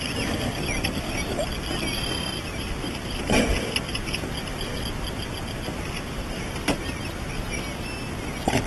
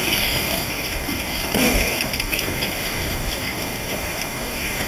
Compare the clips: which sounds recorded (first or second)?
first